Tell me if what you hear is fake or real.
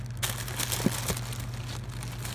real